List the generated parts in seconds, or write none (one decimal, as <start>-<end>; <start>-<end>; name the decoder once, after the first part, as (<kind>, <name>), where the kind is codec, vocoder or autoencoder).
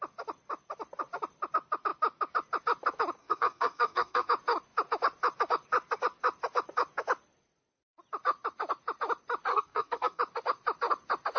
3.2-4.3 (codec, SNAC); 9.5-10.2